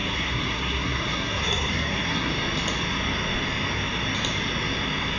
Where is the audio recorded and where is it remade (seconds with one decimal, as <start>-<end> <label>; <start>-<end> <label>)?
0.0-2.3 remade; 2.3-5.2 recorded